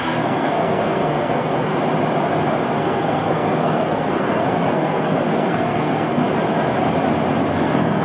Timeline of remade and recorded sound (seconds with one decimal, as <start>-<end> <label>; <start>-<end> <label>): 0.0-1.7 remade; 1.7-2.8 recorded; 2.8-6.2 remade; 6.2-7.5 recorded; 7.5-8.0 remade